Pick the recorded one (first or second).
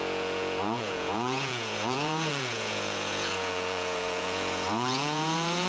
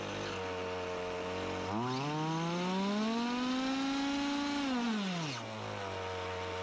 second